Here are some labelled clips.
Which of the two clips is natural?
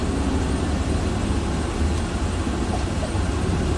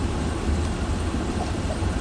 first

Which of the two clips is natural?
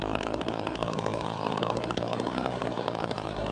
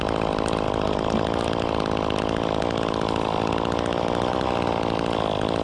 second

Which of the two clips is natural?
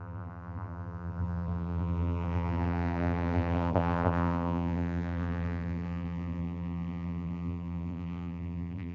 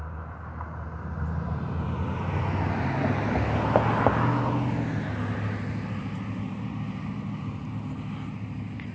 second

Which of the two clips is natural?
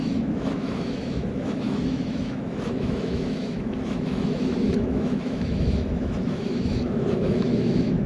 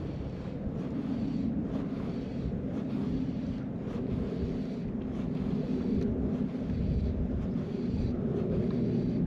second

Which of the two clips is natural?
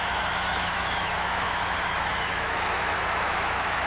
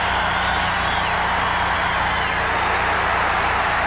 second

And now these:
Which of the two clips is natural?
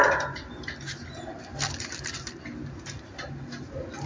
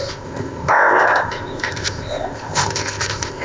first